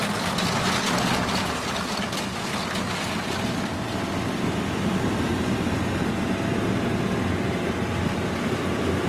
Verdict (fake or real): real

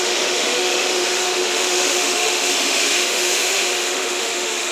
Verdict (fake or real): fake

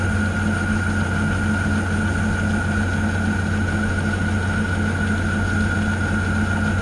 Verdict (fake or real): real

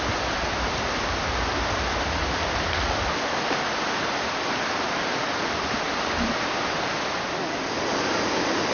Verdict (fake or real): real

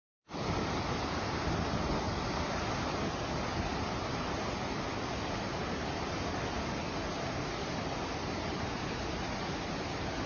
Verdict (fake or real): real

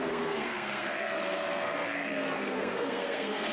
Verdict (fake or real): fake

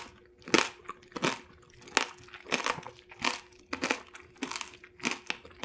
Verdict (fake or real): real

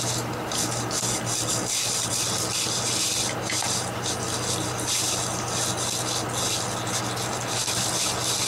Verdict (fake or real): real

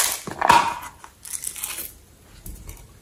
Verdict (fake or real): real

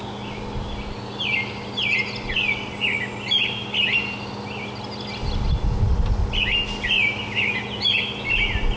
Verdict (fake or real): real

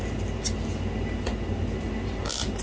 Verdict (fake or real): real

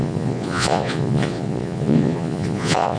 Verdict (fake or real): fake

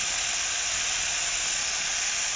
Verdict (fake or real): real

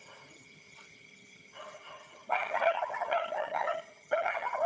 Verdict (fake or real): fake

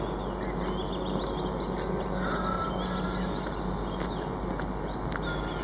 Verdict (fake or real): real